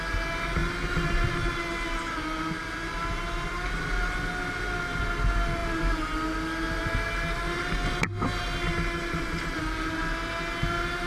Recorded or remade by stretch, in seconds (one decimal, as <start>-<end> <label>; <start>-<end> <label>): 0.0-11.1 recorded